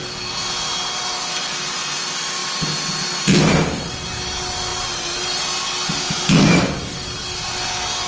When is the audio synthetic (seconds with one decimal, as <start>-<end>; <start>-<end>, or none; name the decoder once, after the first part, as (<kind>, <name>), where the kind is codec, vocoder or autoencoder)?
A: none